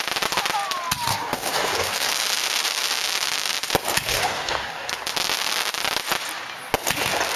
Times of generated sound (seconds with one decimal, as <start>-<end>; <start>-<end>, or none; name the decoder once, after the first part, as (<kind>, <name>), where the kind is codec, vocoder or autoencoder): 1.1-2.1 (codec, DAC); 4.1-4.9